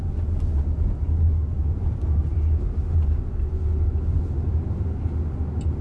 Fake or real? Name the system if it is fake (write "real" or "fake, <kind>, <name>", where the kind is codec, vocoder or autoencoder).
real